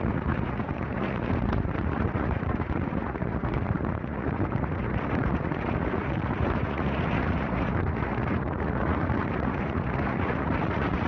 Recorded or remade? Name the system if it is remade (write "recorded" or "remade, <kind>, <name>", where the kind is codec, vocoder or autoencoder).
remade, vocoder, Vocos